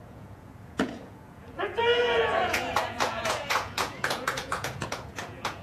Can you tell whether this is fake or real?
fake